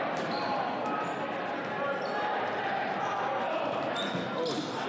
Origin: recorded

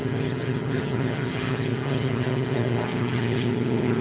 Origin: remade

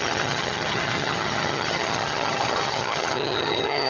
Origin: remade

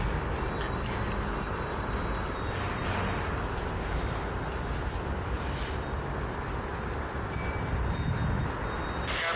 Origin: recorded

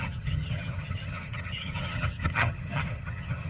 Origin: remade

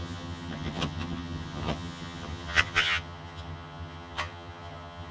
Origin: remade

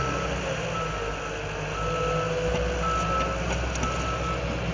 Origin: recorded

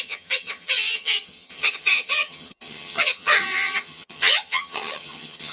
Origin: remade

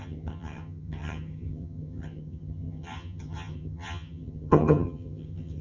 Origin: remade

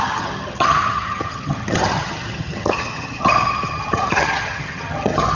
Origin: remade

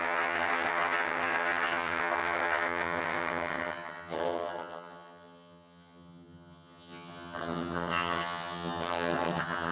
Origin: remade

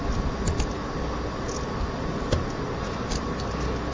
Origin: recorded